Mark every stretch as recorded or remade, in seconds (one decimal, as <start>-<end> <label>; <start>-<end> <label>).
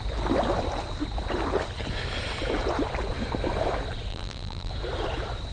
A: 0.0-4.1 recorded; 4.1-4.7 remade; 4.7-5.5 recorded